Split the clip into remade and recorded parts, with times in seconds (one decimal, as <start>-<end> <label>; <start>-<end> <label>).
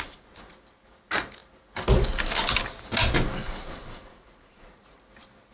0.0-3.4 recorded; 3.4-5.0 remade; 5.0-5.5 recorded